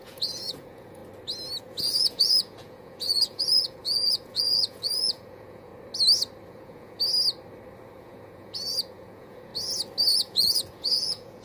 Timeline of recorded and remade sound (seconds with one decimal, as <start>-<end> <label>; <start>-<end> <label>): 0.0-1.0 remade; 1.0-1.6 recorded; 1.6-5.7 remade; 5.7-6.5 recorded; 6.5-7.0 remade; 7.0-8.0 recorded; 8.0-9.5 remade; 9.5-10.1 recorded; 10.1-11.4 remade